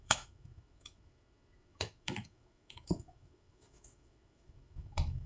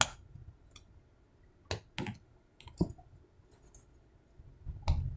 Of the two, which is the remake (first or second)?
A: first